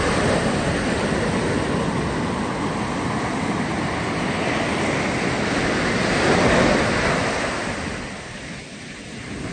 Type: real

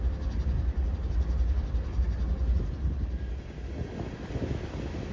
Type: real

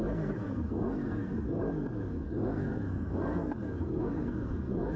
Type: fake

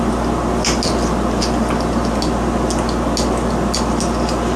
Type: real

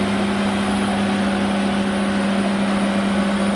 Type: real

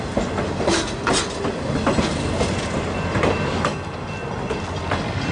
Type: real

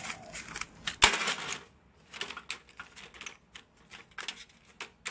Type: real